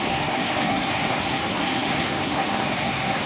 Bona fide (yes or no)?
no